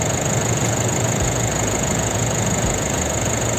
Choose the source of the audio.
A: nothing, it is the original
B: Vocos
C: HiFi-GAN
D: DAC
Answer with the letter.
B